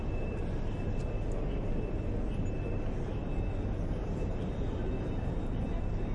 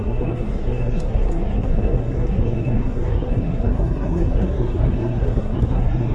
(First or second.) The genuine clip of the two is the first